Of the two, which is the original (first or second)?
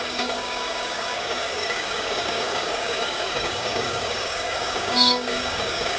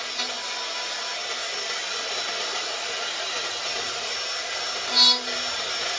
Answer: second